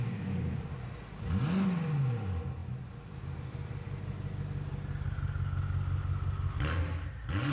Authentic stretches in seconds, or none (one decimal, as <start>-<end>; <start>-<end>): 0.0-7.5